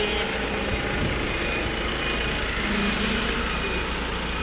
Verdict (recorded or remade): recorded